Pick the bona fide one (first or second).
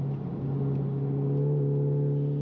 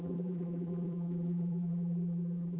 first